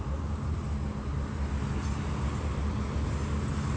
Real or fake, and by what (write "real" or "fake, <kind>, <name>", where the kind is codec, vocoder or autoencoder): real